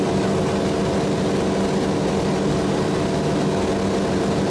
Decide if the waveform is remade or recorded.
recorded